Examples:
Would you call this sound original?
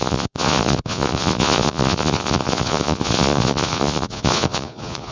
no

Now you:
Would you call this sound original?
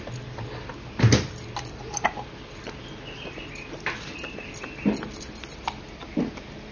yes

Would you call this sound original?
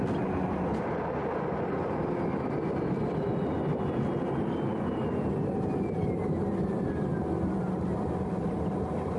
yes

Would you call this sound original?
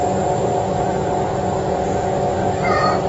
yes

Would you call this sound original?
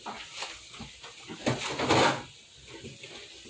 yes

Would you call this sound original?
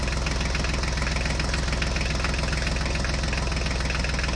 yes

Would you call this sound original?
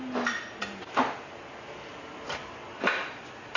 yes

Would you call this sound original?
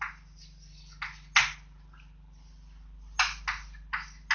yes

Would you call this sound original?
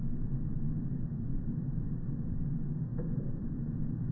yes